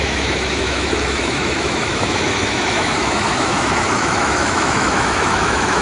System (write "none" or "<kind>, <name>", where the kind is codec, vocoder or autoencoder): autoencoder, DAC-VAE